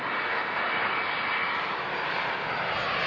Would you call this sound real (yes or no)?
yes